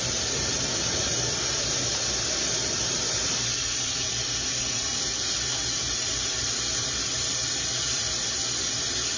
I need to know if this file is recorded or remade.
remade